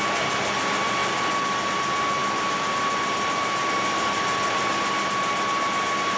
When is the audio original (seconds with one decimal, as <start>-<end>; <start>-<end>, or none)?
0.0-2.2; 5.1-6.2